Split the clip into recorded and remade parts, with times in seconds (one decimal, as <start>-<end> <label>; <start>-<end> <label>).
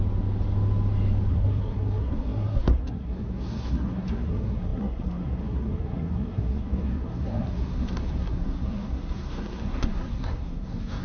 0.0-1.3 recorded; 1.3-11.0 remade